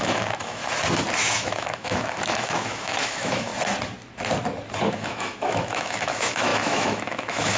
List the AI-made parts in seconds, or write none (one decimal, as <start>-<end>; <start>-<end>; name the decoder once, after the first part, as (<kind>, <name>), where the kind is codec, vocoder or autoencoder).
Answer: 0.0-0.6 (autoencoder, DAC-VAE); 1.2-3.5; 4.9-7.6